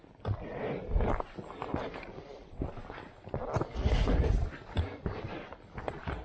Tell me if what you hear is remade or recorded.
recorded